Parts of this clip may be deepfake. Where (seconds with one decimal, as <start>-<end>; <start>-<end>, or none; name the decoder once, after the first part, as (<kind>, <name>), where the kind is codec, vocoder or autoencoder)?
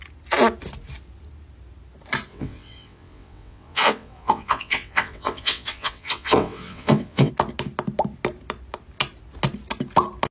2.3-7.3 (vocoder, WaveNeXt)